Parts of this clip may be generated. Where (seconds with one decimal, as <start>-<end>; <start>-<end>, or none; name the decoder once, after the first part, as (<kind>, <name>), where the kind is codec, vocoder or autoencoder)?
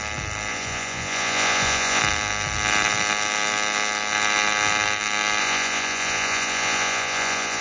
0.5-2.0 (vocoder, Vocos); 5.4-7.6